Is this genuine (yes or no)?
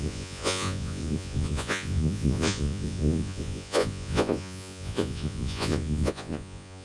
no